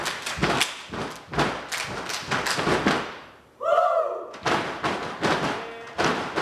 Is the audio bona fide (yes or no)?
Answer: yes